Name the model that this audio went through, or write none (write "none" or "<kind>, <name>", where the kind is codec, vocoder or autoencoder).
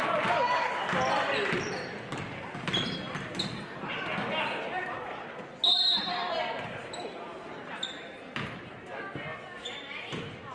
none